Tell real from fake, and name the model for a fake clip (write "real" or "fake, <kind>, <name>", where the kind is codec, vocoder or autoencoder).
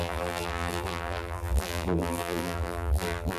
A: fake, vocoder, BigVGAN v2